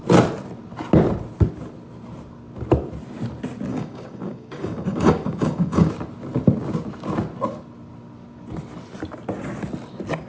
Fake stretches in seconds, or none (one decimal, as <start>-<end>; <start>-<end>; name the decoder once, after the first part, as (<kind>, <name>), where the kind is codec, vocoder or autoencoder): 3.7-5.9 (codec, DAC)